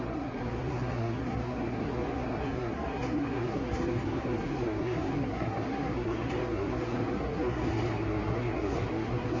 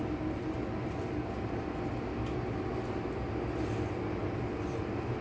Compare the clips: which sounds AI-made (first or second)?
first